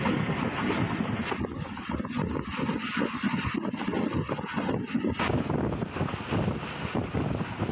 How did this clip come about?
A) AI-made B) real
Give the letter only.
B